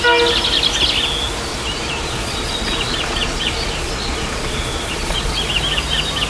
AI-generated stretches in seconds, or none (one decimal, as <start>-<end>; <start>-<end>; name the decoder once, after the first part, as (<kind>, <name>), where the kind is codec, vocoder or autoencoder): 1.5-5.3 (vocoder, Vocos)

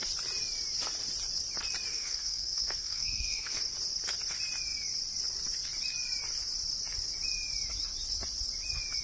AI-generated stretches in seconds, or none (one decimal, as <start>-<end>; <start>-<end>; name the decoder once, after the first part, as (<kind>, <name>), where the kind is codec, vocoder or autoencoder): 1.9-3.6 (codec, SNAC)